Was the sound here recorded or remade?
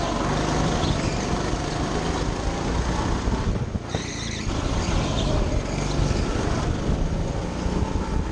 recorded